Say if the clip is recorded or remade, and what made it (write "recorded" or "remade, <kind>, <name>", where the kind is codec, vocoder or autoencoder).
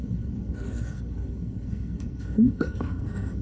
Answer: remade, codec, SNAC